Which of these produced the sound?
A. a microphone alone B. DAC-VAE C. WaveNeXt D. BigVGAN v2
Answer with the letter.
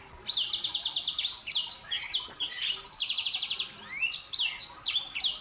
A